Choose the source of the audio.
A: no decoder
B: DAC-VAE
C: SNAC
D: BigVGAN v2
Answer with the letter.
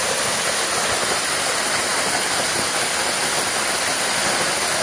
A